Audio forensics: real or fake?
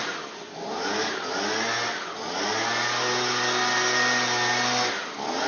real